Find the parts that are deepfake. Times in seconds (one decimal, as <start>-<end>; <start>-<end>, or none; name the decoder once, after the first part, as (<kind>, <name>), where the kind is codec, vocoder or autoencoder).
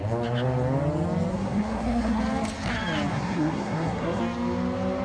1.3-2.2 (codec, SNAC); 3.1-4.2